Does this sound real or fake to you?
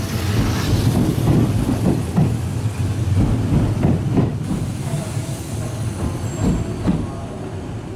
real